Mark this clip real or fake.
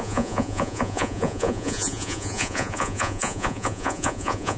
fake